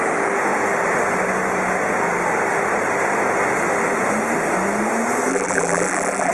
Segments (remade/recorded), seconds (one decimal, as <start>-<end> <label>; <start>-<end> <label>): 0.0-5.3 recorded; 5.3-6.3 remade